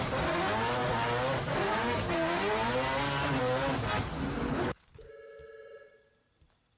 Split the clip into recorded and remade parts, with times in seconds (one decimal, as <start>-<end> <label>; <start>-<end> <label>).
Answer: 0.0-4.5 recorded; 4.5-5.1 remade; 5.1-6.8 recorded